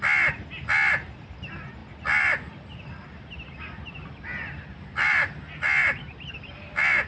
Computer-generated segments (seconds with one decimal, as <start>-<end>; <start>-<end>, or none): 1.8-3.7; 5.8-6.3